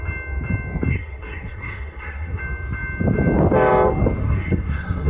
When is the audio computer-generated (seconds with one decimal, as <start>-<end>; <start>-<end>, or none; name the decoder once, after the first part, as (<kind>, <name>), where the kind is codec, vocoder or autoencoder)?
0.9-2.4 (codec, SNAC); 4.2-5.1